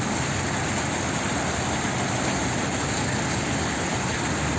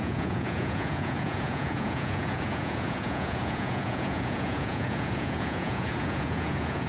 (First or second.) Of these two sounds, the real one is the first